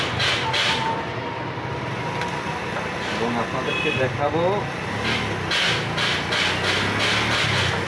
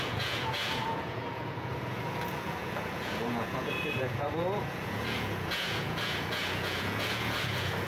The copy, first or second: second